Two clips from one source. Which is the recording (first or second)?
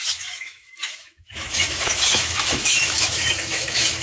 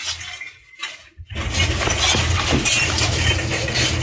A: second